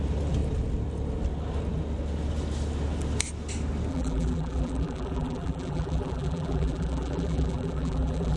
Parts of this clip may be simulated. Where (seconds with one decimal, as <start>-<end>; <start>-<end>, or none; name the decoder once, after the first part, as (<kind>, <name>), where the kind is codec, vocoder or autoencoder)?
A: 3.9-8.4 (vocoder, BigVGAN v2)